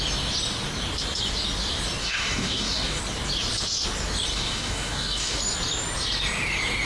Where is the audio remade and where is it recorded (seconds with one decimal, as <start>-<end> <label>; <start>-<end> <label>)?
0.0-2.0 recorded; 2.0-3.0 remade; 3.0-4.3 recorded; 4.3-5.4 remade; 5.4-6.9 recorded

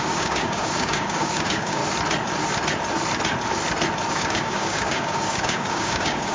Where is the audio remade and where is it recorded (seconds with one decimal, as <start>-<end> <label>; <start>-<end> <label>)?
0.0-1.8 remade; 1.8-4.1 recorded; 4.1-6.3 remade

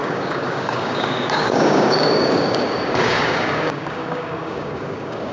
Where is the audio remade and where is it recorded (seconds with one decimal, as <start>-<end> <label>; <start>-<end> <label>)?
0.0-5.3 remade

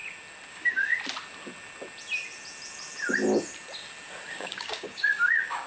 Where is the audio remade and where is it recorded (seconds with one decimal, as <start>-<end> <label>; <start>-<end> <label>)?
0.0-0.5 recorded; 0.5-0.9 remade; 0.9-4.3 recorded; 4.3-5.7 remade

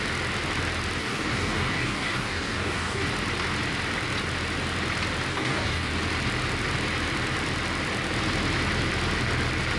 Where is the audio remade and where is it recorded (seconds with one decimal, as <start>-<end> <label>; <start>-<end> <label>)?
0.0-1.0 recorded; 1.0-3.1 remade; 3.1-5.3 recorded; 5.3-5.9 remade; 5.9-9.8 recorded

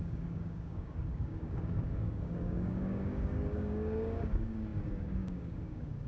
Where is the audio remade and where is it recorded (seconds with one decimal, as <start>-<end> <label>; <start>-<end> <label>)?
0.0-6.1 remade

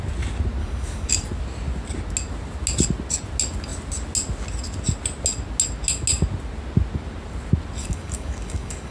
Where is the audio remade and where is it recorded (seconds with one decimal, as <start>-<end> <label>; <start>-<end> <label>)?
0.0-0.6 recorded; 0.6-1.1 remade; 1.1-7.8 recorded; 7.8-8.9 remade

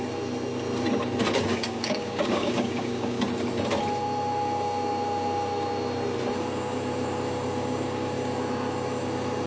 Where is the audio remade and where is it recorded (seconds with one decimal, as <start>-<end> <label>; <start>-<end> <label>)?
0.0-1.5 recorded; 1.5-3.2 remade; 3.2-9.5 recorded